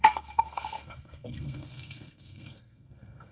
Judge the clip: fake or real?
fake